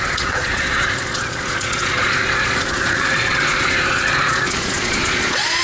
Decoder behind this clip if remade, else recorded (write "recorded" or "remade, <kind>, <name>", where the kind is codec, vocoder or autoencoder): remade, vocoder, Vocos